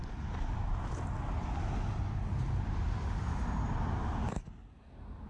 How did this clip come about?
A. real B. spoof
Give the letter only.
A